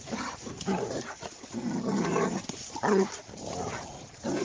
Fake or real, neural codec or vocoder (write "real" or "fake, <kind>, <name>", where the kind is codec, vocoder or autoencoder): fake, vocoder, BigVGAN v2